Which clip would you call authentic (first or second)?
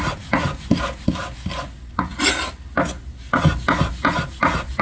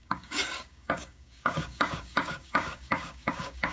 first